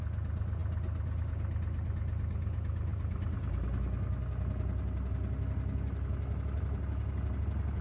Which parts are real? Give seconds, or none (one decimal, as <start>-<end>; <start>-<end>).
0.0-7.8